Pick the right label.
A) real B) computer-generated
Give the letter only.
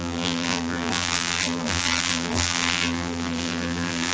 B